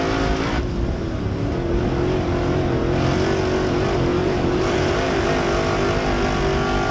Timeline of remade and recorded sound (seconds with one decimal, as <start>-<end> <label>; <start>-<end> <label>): 0.0-4.1 recorded; 4.1-5.3 remade; 5.3-6.9 recorded